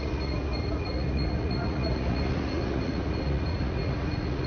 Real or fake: fake